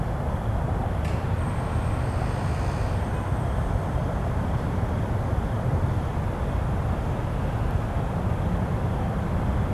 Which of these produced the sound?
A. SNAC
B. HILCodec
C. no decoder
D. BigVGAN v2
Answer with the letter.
C